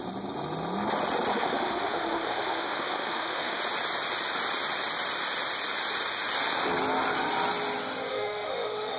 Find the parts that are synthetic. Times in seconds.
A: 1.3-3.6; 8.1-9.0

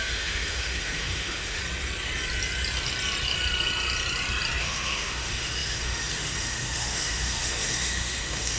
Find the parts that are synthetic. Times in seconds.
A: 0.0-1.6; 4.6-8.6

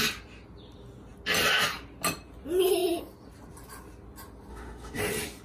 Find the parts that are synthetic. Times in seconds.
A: 4.5-5.0